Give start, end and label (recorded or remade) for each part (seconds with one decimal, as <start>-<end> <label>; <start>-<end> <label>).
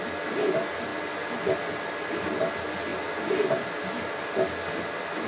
0.0-5.3 recorded